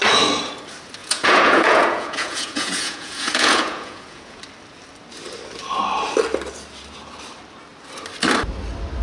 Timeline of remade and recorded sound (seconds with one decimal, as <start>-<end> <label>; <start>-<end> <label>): 0.0-1.0 recorded; 1.0-4.4 remade; 4.4-9.0 recorded